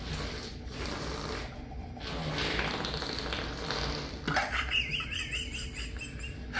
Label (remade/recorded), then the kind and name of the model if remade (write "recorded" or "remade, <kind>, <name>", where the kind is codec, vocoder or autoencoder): recorded